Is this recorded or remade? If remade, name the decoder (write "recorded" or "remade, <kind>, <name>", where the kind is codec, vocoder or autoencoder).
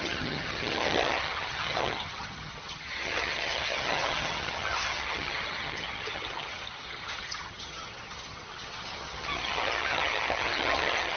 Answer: remade, vocoder, HiFi-GAN